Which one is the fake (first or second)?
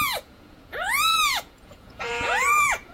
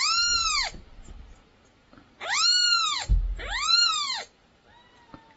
first